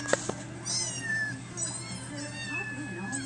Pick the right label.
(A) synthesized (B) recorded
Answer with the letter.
B